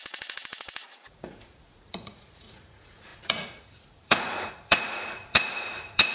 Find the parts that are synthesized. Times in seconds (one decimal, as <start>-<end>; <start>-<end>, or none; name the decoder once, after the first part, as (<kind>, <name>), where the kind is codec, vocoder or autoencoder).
0.0-6.1 (vocoder, Vocos)